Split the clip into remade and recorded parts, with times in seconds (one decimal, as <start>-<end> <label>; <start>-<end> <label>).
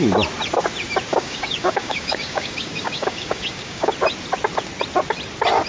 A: 0.0-1.1 recorded; 1.1-3.9 remade; 3.9-5.7 recorded